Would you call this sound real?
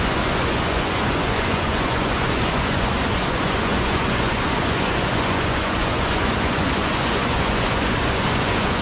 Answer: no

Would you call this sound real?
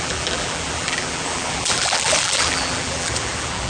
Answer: no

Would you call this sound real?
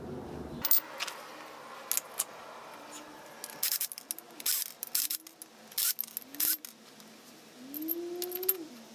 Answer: yes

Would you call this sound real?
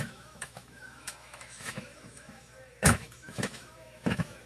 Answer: no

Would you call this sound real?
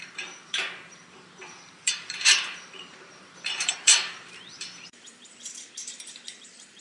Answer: no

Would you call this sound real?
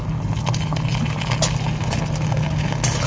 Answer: yes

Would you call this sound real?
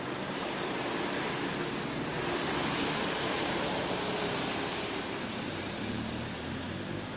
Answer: no